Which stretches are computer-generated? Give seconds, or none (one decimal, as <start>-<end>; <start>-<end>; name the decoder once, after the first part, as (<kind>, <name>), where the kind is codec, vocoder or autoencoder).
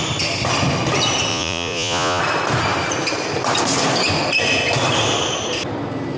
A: 1.3-2.2 (vocoder, Vocos)